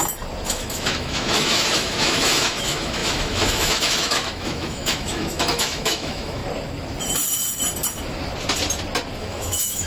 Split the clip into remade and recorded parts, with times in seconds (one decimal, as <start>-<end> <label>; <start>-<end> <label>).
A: 0.0-0.5 recorded; 0.5-6.4 remade; 6.4-9.2 recorded; 9.2-9.9 remade